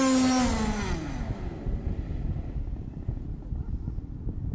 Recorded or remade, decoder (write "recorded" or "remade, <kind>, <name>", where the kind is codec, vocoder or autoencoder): recorded